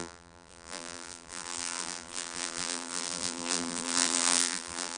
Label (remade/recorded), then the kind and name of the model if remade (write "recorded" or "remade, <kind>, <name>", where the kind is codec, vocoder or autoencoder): remade, vocoder, BigVGAN v2